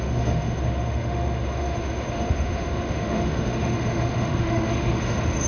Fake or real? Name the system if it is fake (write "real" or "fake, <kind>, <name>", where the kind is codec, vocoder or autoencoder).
fake, autoencoder, DAC-VAE